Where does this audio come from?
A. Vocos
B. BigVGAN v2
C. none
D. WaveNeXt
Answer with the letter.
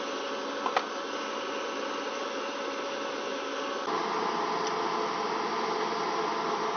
C